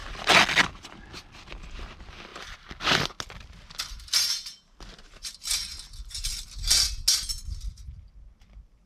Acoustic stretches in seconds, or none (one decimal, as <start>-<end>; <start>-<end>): 0.0-8.9